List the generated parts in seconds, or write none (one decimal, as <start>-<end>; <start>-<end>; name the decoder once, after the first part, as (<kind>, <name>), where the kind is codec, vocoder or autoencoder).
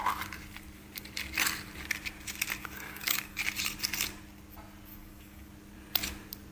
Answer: 2.6-3.4 (codec, DAC); 4.9-5.5